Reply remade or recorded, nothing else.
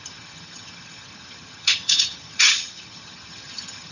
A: remade